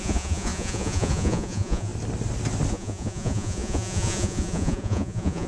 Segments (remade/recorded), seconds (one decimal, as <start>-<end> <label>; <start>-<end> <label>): 0.0-1.9 remade; 1.9-2.7 recorded; 2.7-5.5 remade